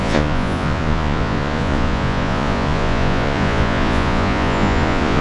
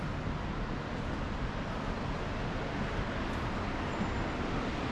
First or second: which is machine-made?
first